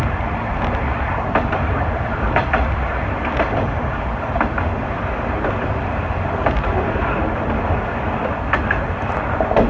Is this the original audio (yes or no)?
yes